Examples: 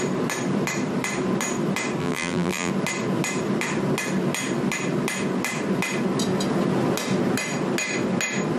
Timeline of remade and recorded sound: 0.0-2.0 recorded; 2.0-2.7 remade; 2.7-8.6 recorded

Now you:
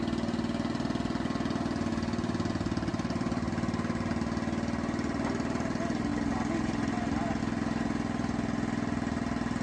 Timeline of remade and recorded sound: 0.0-2.9 recorded; 2.9-3.5 remade; 3.5-9.6 recorded

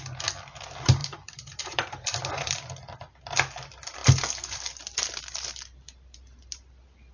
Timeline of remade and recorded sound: 0.0-1.0 recorded; 1.0-2.7 remade; 2.7-7.1 recorded

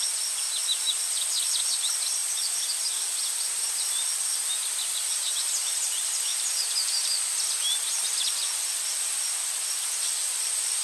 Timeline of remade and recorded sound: 0.0-6.3 remade; 6.3-10.1 recorded; 10.1-10.8 remade

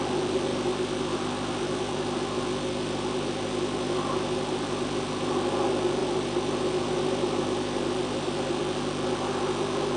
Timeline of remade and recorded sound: 0.0-0.5 recorded; 0.5-5.3 remade; 5.3-6.0 recorded; 6.0-8.6 remade; 8.6-10.0 recorded

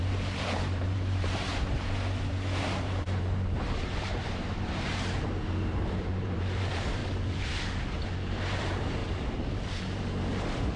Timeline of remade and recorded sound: 0.0-1.5 remade; 1.5-2.7 recorded; 2.7-7.0 remade; 7.0-8.1 recorded; 8.1-9.0 remade; 9.0-9.8 recorded; 9.8-10.8 remade

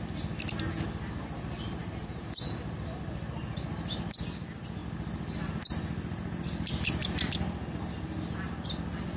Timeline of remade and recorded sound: 0.0-1.8 recorded; 1.8-2.5 remade; 2.5-9.2 recorded

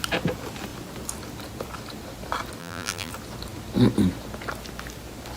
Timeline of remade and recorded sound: 0.0-2.6 recorded; 2.6-3.1 remade; 3.1-5.4 recorded